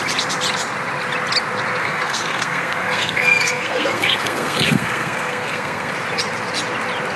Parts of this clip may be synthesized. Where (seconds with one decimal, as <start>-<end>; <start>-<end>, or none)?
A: 1.8-5.9